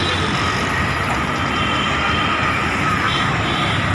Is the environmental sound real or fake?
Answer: real